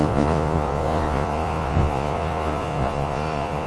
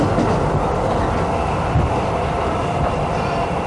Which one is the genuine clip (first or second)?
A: second